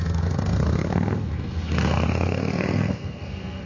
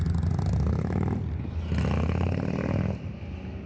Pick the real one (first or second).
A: second